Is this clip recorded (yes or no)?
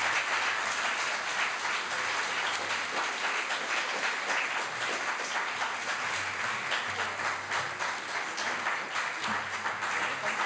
yes